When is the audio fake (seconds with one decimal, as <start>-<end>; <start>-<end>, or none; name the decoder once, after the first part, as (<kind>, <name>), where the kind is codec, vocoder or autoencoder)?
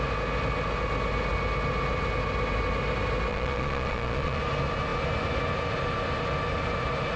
3.3-4.4 (vocoder, Vocos)